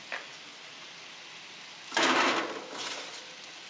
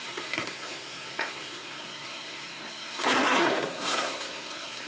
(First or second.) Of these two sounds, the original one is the first